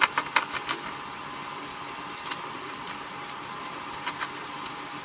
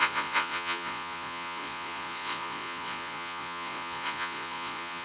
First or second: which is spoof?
second